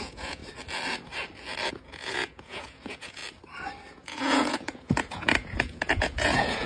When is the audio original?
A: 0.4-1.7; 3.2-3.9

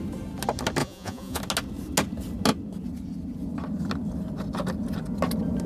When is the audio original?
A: 0.0-0.8; 1.4-5.7

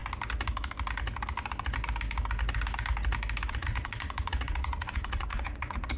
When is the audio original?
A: 0.0-3.5

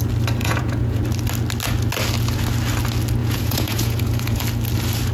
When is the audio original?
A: 0.0-0.4; 1.0-3.2; 4.4-5.1

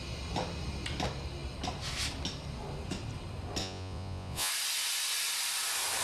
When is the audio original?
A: 0.0-3.6; 4.5-6.0

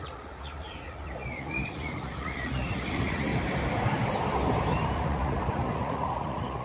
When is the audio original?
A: 3.3-4.9

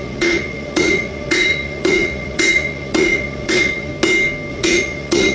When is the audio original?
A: 3.9-4.5

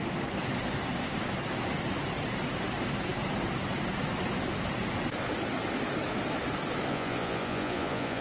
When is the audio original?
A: 0.0-6.9